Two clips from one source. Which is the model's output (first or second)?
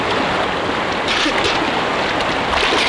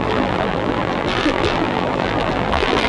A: second